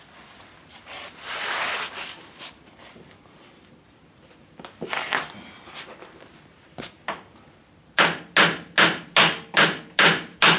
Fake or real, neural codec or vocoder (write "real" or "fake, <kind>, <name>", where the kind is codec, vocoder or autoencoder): real